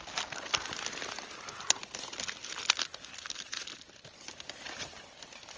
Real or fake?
real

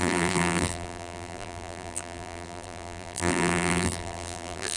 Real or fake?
fake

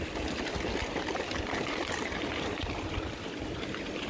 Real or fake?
fake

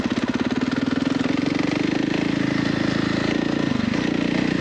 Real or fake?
real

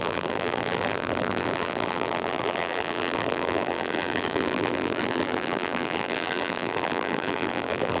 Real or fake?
fake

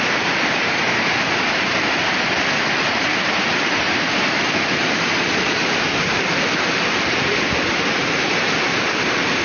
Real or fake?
fake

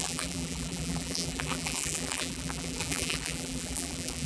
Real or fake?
fake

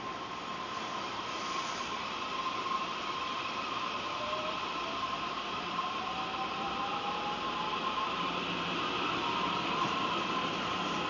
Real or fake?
fake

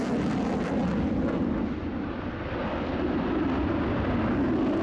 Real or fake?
real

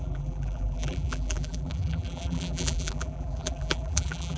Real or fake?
fake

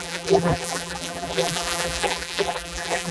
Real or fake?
fake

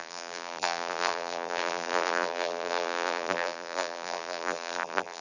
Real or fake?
fake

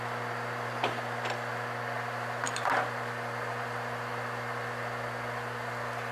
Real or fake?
real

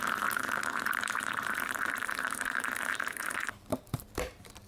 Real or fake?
fake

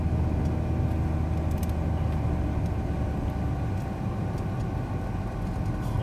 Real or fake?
real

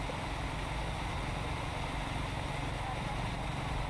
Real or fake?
real